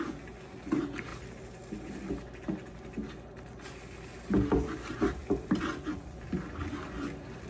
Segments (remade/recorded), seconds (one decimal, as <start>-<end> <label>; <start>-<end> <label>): 0.0-7.5 recorded

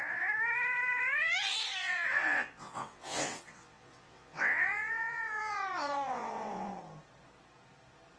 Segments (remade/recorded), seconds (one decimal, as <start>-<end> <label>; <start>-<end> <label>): 0.0-1.8 recorded; 1.8-6.7 remade; 6.7-8.2 recorded

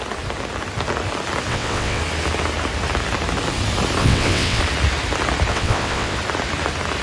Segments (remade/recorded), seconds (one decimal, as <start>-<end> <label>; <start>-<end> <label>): 0.0-1.5 recorded; 1.5-2.0 remade; 2.0-4.0 recorded; 4.0-4.6 remade; 4.6-5.5 recorded; 5.5-6.2 remade; 6.2-7.0 recorded

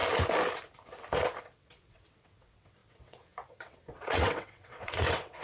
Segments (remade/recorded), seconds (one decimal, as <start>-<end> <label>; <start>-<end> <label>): 0.0-1.4 recorded; 1.4-5.4 remade

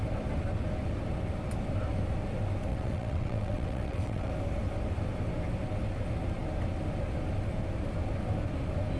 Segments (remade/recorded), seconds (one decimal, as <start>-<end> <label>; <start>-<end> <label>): 0.0-2.7 recorded; 2.7-4.3 remade; 4.3-9.0 recorded

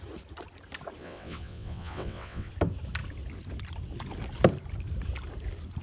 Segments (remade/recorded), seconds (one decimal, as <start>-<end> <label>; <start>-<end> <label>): 0.0-1.0 recorded; 1.0-2.5 remade; 2.5-5.8 recorded

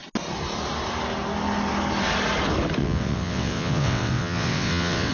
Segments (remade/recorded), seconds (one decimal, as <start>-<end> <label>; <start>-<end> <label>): 0.0-2.8 recorded; 2.8-5.1 remade